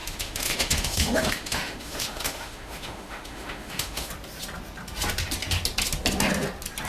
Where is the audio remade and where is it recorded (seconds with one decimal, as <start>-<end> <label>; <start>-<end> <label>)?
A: 0.0-4.1 remade; 4.1-6.9 recorded